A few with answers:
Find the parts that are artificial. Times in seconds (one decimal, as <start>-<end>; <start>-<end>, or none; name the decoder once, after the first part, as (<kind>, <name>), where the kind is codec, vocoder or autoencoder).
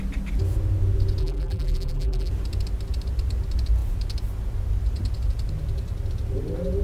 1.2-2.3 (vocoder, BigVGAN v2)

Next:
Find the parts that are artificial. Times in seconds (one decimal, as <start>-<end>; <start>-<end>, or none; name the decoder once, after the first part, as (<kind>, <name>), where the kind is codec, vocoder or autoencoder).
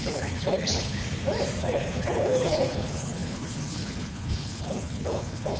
0.0-1.0 (codec, HILCodec); 1.6-5.6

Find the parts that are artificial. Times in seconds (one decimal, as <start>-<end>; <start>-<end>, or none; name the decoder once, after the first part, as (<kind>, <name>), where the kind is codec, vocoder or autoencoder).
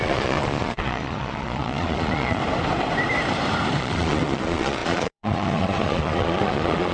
0.0-2.4 (vocoder, Vocos); 3.8-6.9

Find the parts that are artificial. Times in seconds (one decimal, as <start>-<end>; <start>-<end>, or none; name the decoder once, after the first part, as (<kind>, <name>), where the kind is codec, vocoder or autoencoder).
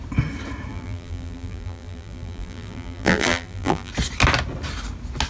0.7-3.9 (vocoder, BigVGAN v2)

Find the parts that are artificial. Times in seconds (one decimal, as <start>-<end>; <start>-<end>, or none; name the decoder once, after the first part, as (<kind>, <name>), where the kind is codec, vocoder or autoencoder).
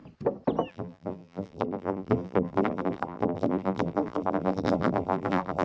0.7-5.6 (vocoder, BigVGAN v2)